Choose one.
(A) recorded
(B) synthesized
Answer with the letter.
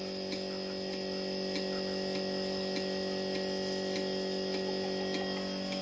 A